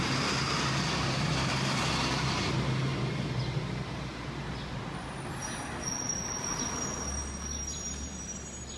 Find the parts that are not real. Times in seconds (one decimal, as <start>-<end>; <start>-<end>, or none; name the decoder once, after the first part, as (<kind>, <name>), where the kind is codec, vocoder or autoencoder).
none